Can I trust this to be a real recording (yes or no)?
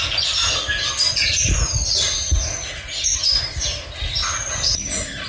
yes